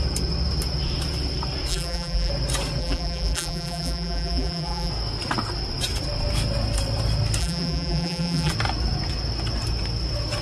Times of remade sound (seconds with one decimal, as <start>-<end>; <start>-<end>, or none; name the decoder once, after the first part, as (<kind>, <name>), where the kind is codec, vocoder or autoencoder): 1.7-2.3 (vocoder, BigVGAN v2); 2.8-4.9; 7.4-8.5

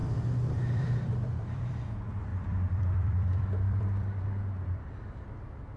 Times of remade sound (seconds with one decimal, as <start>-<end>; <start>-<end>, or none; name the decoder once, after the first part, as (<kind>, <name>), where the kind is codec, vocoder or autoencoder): 0.0-1.9 (vocoder, BigVGAN v2); 2.3-4.2

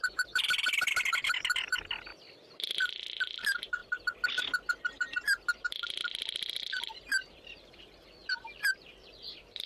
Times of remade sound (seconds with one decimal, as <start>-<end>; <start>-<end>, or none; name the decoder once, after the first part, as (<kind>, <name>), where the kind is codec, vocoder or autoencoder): 0.0-2.1 (vocoder, BigVGAN v2); 3.4-6.0; 6.8-9.7

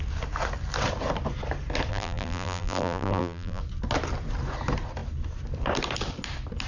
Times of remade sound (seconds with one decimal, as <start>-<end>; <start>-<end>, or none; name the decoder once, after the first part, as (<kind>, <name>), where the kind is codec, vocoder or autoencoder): 1.9-3.6 (vocoder, BigVGAN v2)

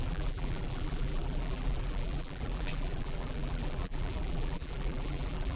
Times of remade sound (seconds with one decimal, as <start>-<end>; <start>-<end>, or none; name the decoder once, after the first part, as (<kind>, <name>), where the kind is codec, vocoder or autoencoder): 0.0-5.6 (vocoder, BigVGAN v2)

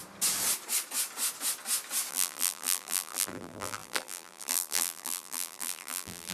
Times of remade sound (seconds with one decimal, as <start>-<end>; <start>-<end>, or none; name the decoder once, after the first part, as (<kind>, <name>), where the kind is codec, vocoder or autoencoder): 2.1-6.3 (vocoder, BigVGAN v2)